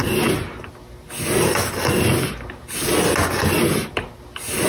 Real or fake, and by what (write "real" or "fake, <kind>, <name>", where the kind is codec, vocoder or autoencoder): real